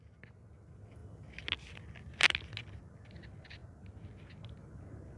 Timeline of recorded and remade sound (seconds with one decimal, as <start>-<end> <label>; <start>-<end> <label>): 0.0-5.2 recorded